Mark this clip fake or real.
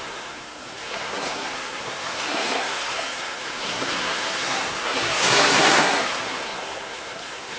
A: fake